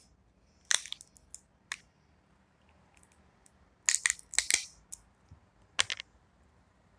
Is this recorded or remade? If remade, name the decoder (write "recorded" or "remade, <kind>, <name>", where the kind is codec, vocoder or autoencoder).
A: recorded